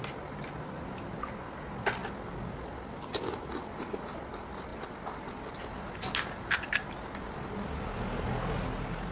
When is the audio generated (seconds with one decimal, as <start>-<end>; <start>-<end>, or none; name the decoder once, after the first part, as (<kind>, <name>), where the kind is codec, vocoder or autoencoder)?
none

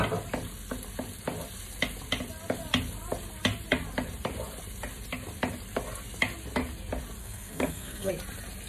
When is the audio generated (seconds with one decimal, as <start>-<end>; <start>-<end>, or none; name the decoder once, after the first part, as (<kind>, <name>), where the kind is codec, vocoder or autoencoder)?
7.2-8.1 (codec, SNAC)

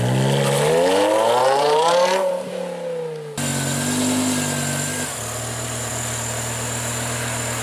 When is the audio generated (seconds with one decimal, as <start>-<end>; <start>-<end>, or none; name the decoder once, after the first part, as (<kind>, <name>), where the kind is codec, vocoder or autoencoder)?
1.4-2.3 (vocoder, BigVGAN v2)

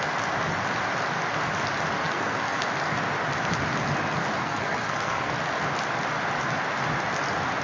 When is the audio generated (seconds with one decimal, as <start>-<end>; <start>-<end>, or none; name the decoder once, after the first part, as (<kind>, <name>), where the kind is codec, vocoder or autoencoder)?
2.0-2.6 (codec, SNAC); 4.4-5.3

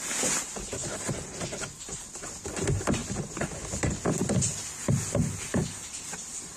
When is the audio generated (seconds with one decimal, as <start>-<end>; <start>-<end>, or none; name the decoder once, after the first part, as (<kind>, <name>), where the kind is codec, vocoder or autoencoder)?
none